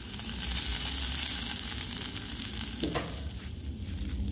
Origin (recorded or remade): recorded